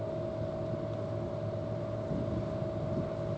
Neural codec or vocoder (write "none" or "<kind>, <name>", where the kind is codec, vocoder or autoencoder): none